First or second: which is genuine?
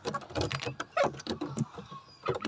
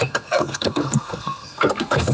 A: first